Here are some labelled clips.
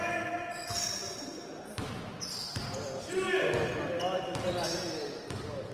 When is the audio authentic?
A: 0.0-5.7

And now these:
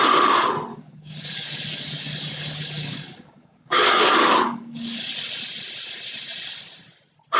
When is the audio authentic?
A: 0.0-0.7; 5.1-7.4

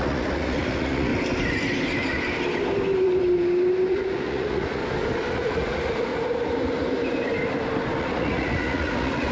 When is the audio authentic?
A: 1.1-3.9; 4.8-5.3; 6.1-8.0

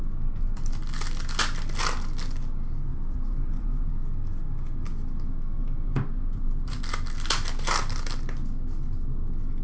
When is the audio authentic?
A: 0.0-2.9; 3.9-5.6; 6.8-9.6

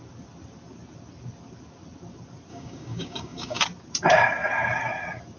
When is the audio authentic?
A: 0.0-2.5; 3.6-5.4